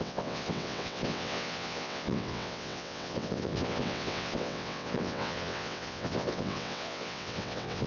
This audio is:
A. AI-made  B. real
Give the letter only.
A